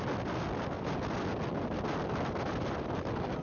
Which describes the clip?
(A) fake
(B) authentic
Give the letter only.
B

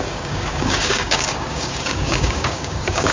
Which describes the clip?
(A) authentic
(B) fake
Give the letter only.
B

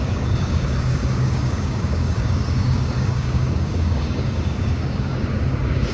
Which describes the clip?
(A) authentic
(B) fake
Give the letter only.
B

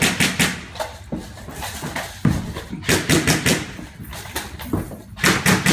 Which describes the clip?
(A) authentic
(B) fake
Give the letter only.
A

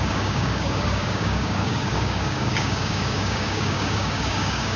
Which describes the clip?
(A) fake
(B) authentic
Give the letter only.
A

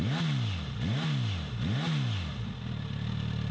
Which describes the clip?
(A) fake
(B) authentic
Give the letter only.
B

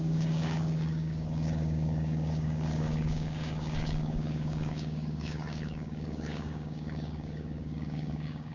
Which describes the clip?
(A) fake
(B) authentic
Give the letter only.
A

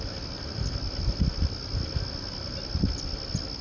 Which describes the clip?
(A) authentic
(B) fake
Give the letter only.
A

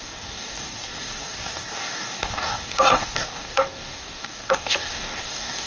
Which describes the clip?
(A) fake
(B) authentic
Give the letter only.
A